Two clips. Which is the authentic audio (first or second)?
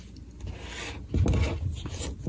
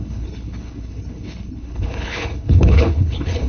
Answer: first